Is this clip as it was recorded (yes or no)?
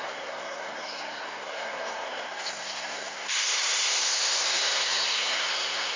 no